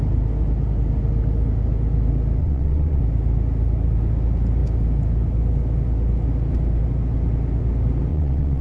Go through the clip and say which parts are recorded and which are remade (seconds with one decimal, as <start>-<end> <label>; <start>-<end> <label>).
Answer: 0.0-2.4 recorded; 2.4-3.0 remade; 3.0-8.1 recorded; 8.1-8.6 remade

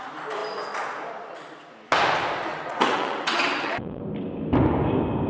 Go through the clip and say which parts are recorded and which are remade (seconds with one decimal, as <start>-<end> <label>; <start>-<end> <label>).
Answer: 0.0-2.5 recorded; 2.5-4.0 remade; 4.0-5.3 recorded

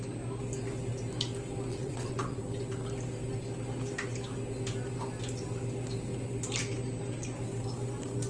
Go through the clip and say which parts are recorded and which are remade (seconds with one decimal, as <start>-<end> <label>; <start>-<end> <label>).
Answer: 0.0-1.7 recorded; 1.7-2.4 remade; 2.4-8.3 recorded

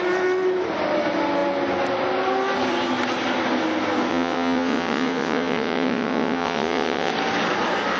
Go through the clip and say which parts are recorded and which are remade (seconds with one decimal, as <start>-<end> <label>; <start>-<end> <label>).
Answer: 0.0-4.1 recorded; 4.1-7.1 remade; 7.1-8.0 recorded

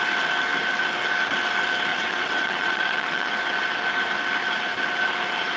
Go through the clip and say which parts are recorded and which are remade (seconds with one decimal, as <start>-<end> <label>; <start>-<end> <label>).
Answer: 0.0-1.9 recorded; 1.9-3.3 remade; 3.3-5.6 recorded

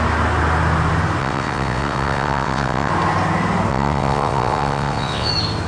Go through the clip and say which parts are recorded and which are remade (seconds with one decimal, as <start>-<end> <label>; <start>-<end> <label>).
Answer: 0.0-1.2 recorded; 1.2-2.9 remade; 2.9-3.7 recorded; 3.7-5.3 remade; 5.3-5.7 recorded

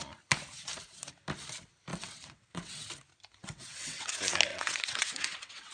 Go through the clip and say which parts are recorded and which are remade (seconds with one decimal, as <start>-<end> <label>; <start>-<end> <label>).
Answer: 0.0-1.9 recorded; 1.9-2.9 remade; 2.9-3.4 recorded; 3.4-4.1 remade; 4.1-4.5 recorded; 4.5-5.7 remade